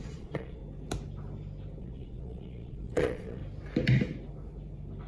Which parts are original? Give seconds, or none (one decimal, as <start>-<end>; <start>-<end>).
0.6-1.8; 3.4-5.1